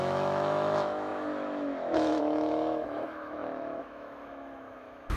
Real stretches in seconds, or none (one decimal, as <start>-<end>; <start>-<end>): none